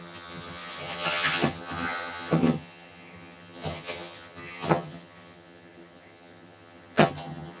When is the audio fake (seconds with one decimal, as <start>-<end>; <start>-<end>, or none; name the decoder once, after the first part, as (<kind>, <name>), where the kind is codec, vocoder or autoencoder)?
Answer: 0.0-7.6 (vocoder, HiFi-GAN)